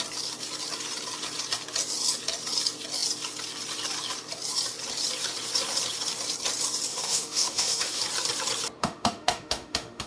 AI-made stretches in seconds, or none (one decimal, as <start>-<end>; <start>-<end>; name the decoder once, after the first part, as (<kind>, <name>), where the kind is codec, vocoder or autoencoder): 6.9-8.0 (autoencoder, DAC-VAE); 8.8-10.1